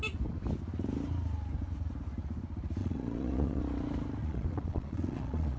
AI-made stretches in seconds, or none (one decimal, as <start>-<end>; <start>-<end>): 2.8-3.6; 4.2-5.6